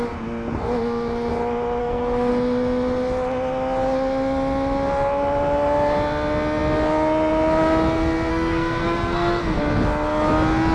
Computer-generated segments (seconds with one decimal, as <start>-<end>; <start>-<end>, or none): 1.8-2.3; 8.3-9.6